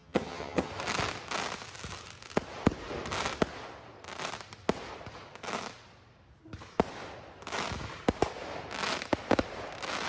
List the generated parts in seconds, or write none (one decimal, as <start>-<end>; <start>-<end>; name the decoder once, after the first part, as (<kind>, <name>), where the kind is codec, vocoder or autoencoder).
0.0-0.7 (vocoder, HiFi-GAN)